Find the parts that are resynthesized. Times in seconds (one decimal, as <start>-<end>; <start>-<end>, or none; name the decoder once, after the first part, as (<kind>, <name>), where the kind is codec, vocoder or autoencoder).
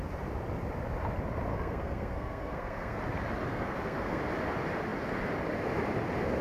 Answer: 1.5-3.0 (codec, SNAC); 3.5-4.2